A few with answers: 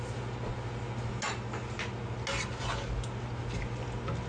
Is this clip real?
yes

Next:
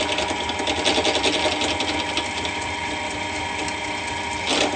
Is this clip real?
yes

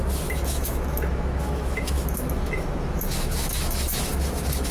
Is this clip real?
no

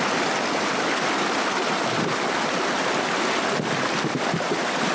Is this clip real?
yes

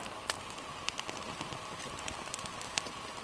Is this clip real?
yes